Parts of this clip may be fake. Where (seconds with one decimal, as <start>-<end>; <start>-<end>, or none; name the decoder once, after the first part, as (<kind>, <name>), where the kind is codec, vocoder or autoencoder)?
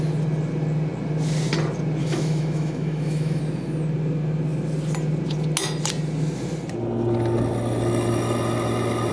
2.0-3.4 (autoencoder, DAC-VAE)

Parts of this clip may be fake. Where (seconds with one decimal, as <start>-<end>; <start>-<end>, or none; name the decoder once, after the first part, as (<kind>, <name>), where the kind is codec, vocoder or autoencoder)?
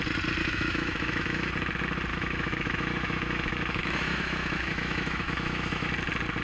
0.4-1.5 (autoencoder, DAC-VAE); 2.1-5.9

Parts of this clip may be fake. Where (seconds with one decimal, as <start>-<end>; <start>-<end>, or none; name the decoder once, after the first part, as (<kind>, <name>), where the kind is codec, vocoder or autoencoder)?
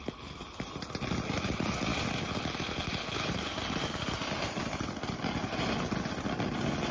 none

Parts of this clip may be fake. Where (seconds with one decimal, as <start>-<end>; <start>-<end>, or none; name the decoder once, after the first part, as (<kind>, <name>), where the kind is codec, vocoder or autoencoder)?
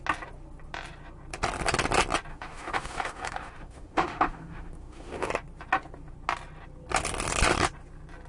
2.3-5.3 (autoencoder, DAC-VAE)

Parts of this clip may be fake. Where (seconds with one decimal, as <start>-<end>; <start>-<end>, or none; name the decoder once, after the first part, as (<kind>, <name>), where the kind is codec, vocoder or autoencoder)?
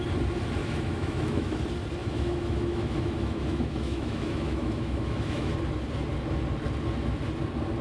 0.6-1.6 (autoencoder, DAC-VAE); 2.0-5.5